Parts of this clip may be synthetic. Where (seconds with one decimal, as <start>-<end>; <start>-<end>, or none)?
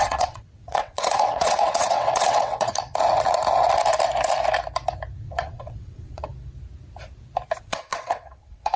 0.0-2.7; 5.2-6.3; 7.6-8.8